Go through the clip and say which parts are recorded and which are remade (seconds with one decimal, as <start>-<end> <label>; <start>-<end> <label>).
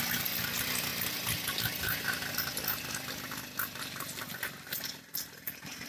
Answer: 0.0-0.9 recorded; 0.9-4.4 remade; 4.4-5.9 recorded